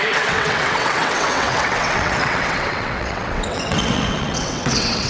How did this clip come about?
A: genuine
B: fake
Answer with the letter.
B